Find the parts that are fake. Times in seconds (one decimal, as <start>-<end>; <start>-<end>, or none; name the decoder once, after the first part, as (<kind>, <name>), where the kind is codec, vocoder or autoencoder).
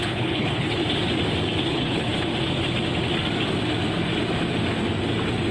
0.0-0.8 (codec, HILCodec); 1.7-2.1